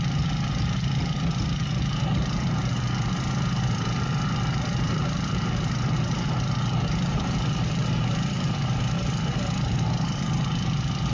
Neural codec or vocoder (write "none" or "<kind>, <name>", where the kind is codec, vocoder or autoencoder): vocoder, BigVGAN v2